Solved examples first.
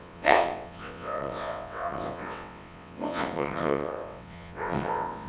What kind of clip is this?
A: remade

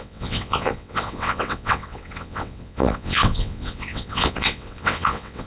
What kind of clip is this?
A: remade